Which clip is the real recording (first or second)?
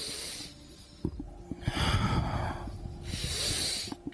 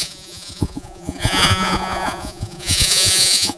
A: first